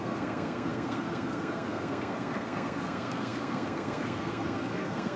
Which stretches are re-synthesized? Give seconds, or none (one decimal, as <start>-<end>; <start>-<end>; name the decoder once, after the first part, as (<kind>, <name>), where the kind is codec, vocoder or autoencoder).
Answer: 0.0-5.2 (codec, SNAC)